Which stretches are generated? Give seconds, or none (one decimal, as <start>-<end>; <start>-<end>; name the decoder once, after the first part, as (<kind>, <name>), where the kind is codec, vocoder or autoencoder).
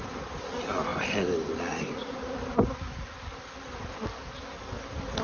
0.9-1.7 (vocoder, BigVGAN v2)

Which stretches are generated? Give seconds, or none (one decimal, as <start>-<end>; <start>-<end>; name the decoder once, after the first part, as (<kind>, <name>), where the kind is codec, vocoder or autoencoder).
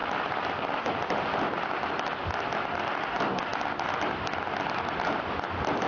none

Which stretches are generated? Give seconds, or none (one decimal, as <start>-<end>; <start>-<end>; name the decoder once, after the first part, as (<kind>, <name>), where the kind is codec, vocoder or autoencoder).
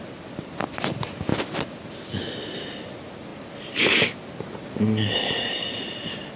5.1-5.7 (codec, DAC)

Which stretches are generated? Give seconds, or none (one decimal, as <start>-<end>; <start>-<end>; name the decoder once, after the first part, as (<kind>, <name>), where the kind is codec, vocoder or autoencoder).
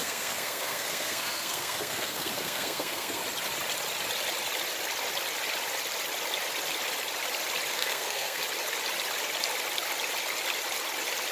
0.0-3.2 (codec, SNAC); 7.7-8.4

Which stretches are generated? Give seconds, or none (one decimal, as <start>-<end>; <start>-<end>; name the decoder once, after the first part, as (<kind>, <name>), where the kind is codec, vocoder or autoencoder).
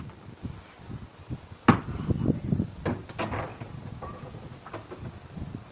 3.5-4.5 (vocoder, Vocos)